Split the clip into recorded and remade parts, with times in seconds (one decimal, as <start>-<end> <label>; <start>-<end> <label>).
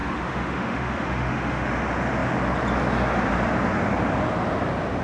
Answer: 0.0-1.7 remade; 1.7-5.0 recorded